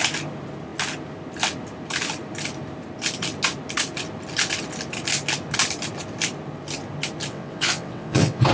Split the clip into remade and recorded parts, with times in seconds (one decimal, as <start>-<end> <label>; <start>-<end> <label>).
0.0-7.3 recorded; 7.3-8.5 remade